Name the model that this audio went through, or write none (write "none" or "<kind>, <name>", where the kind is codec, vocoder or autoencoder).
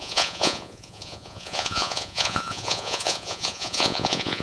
vocoder, Vocos